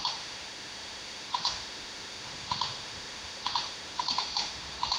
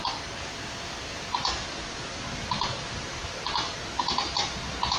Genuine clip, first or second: second